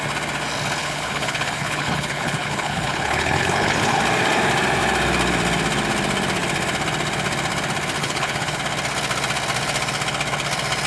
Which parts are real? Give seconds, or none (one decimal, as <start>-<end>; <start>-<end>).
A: 0.0-0.8; 4.0-8.0; 8.6-10.9

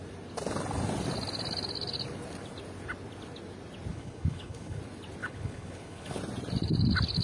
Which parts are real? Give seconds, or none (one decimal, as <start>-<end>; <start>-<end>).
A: 0.0-3.9; 4.8-5.2; 6.2-7.2

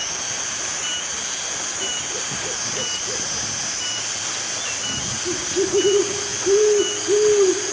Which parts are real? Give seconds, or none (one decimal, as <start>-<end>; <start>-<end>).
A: 0.0-7.7

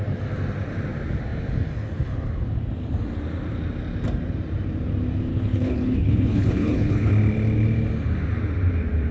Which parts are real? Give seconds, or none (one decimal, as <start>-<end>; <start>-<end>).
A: 0.0-5.3; 7.1-9.1